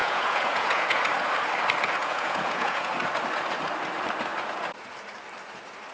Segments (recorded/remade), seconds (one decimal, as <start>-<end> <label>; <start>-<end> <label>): 0.0-1.1 remade; 1.1-2.0 recorded; 2.0-2.9 remade; 2.9-5.9 recorded